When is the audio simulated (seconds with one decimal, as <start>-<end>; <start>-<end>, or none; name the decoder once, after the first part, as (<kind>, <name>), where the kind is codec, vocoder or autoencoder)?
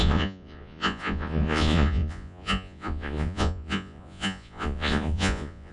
0.0-5.7 (vocoder, Vocos)